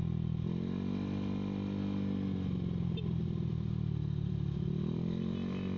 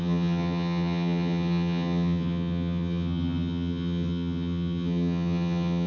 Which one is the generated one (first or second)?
second